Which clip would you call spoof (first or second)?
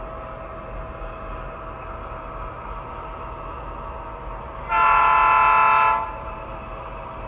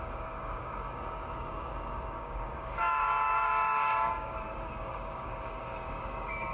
second